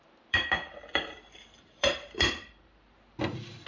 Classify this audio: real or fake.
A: fake